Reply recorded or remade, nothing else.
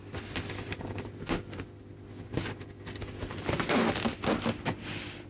recorded